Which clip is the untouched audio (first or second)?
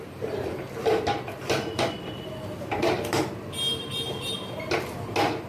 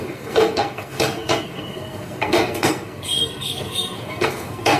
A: first